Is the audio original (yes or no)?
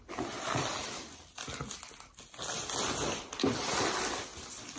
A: yes